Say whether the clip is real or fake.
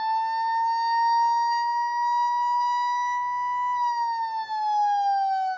real